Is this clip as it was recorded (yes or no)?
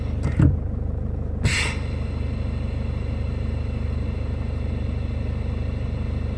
yes